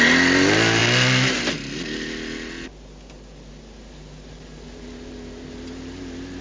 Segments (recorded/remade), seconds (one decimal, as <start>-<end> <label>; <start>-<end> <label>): 0.0-6.4 recorded